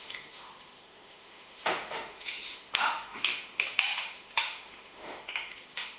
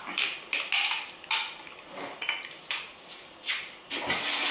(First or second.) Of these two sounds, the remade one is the first